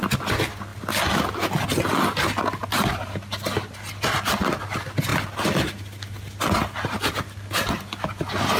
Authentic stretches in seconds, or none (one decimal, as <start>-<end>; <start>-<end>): 0.0-2.6; 3.2-8.6